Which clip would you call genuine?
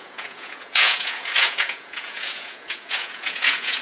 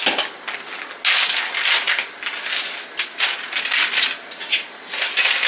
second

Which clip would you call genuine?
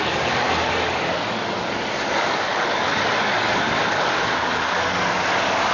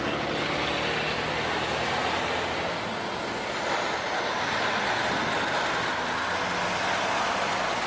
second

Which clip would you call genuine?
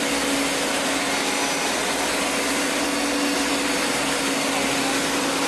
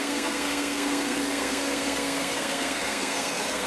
first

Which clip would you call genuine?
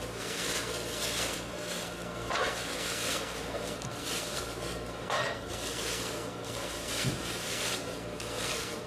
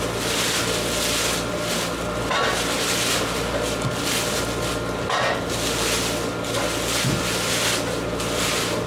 second